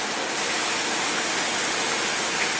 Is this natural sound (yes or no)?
yes